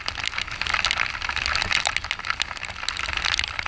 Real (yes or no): yes